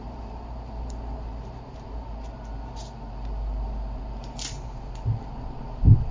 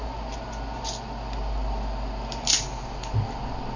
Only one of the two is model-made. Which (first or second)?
first